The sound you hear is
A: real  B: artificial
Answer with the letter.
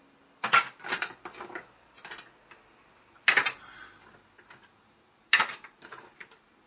A